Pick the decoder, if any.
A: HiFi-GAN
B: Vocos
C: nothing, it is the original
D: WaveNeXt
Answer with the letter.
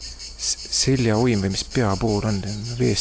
C